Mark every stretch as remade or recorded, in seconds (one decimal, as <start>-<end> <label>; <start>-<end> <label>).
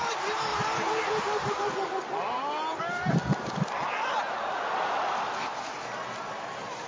0.0-6.9 recorded